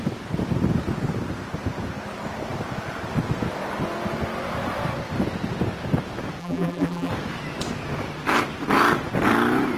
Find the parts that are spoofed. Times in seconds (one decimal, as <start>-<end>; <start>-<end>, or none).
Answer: 6.4-7.1